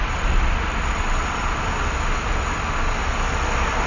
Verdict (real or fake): real